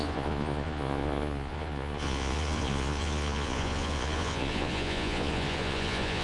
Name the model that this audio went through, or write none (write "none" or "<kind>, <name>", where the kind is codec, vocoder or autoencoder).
vocoder, Vocos